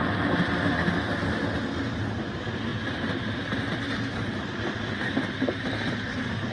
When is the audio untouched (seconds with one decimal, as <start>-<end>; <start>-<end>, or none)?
0.0-6.5